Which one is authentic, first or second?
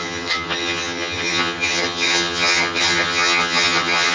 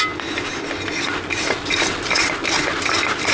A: second